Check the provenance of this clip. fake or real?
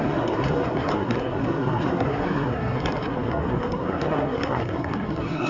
fake